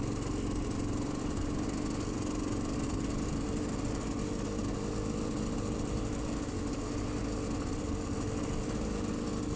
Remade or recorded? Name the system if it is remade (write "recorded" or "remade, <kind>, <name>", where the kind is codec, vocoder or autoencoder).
recorded